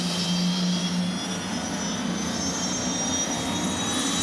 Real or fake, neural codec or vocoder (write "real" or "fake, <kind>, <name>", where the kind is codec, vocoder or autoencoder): real